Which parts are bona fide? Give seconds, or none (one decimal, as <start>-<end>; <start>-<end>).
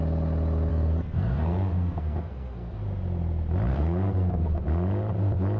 0.0-0.7; 2.8-3.7; 4.6-5.6